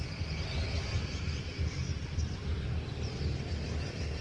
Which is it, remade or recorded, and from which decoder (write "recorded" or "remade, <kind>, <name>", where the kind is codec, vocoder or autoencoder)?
recorded